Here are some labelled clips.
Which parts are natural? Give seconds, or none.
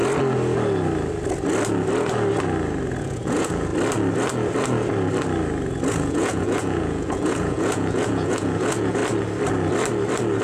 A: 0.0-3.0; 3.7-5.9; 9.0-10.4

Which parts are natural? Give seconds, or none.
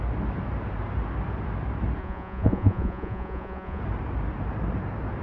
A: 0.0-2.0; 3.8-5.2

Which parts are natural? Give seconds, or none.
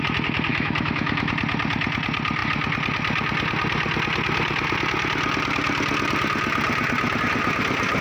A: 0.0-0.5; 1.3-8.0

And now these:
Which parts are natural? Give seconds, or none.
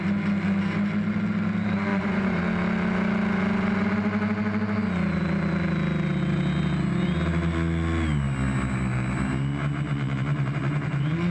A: 0.0-1.9; 2.4-9.9; 10.9-11.3